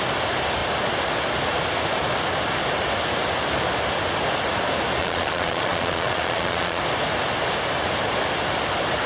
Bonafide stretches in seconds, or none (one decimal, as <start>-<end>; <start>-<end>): 0.0-5.0; 6.8-9.1